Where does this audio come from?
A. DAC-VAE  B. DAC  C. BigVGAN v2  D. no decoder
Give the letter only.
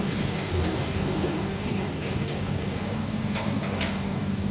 B